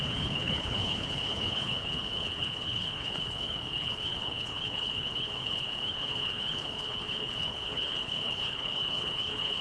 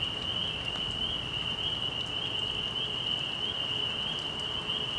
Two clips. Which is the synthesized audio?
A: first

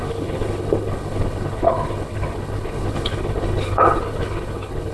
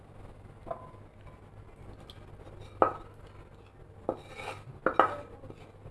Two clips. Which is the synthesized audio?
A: first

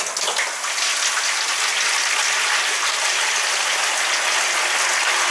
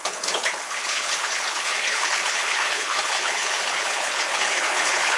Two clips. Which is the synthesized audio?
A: second